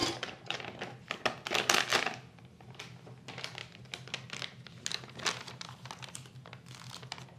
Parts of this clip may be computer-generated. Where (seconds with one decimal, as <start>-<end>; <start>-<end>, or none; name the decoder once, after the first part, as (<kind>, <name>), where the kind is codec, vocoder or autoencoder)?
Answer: 0.0-0.6 (vocoder, BigVGAN v2)